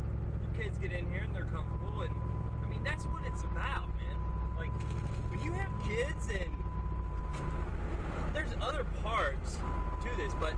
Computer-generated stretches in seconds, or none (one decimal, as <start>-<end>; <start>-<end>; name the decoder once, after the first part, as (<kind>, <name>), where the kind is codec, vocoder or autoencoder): 7.3-8.7 (vocoder, BigVGAN v2)